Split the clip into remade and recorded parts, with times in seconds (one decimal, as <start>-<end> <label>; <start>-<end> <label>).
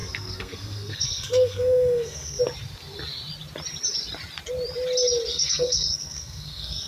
0.0-2.4 remade; 2.4-5.3 recorded; 5.3-6.9 remade